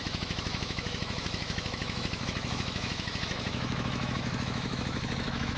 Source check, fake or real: fake